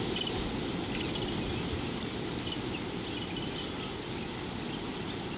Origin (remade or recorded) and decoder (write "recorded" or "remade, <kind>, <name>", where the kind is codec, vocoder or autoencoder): recorded